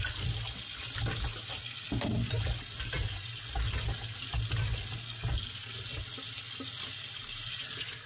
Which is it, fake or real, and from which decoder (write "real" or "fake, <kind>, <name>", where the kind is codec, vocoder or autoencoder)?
real